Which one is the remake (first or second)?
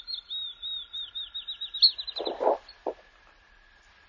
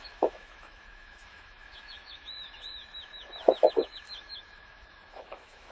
second